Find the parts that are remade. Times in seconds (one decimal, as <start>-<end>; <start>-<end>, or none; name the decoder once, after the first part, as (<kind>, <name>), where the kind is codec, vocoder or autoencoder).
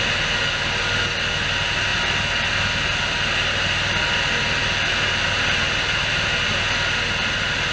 none